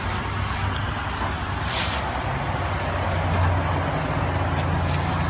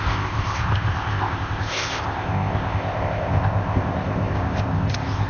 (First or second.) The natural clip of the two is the first